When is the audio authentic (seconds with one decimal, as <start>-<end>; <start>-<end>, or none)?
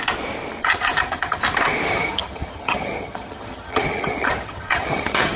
0.0-0.6; 1.4-1.9